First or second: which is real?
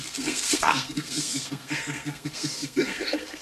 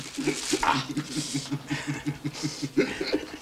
second